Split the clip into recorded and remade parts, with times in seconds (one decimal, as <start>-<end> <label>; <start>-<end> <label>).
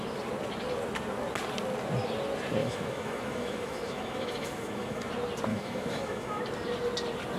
0.0-2.6 recorded; 2.6-5.1 remade; 5.1-5.5 recorded; 5.5-6.4 remade; 6.4-7.4 recorded